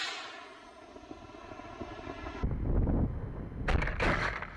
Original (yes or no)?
yes